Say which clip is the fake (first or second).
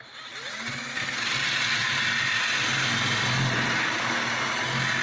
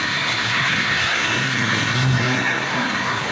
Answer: second